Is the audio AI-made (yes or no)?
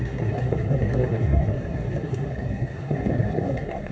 yes